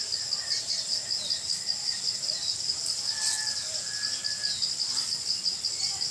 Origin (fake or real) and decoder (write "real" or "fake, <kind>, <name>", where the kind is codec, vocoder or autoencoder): real